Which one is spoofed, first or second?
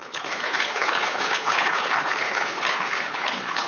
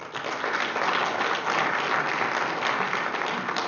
first